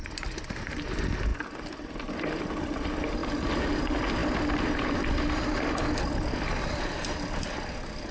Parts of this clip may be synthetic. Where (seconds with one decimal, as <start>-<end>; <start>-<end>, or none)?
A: 0.0-3.2; 3.8-8.1